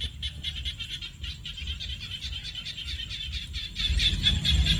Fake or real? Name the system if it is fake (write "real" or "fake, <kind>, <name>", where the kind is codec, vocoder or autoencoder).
real